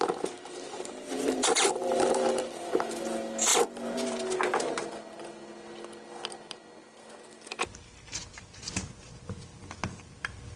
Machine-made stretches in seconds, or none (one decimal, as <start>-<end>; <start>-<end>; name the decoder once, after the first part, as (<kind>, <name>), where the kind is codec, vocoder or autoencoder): 0.7-2.8 (vocoder, BigVGAN v2)